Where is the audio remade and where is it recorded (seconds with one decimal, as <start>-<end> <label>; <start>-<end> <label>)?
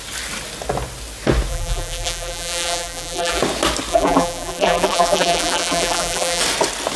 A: 0.0-1.5 recorded; 1.5-3.4 remade; 3.4-3.9 recorded; 3.9-6.4 remade; 6.4-7.0 recorded